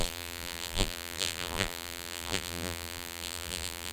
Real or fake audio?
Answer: fake